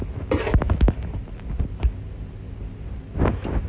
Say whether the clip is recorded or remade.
recorded